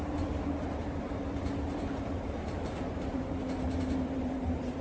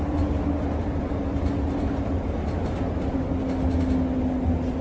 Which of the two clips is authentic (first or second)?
second